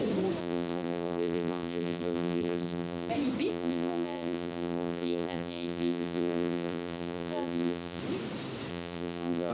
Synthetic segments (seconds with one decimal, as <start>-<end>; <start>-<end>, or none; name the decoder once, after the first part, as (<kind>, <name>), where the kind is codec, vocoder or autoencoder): 0.4-3.1 (vocoder, BigVGAN v2); 3.5-8.0; 8.7-9.5